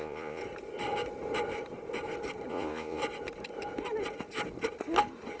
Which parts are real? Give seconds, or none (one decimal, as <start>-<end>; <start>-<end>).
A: 0.4-2.5; 3.0-5.4